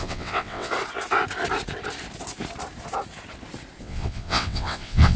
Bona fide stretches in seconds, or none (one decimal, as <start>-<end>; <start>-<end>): 0.7-3.8